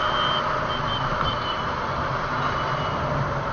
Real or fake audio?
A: real